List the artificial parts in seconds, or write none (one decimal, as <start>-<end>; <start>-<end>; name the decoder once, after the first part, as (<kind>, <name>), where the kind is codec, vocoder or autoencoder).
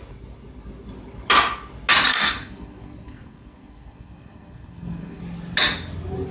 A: 2.1-5.2 (codec, SNAC)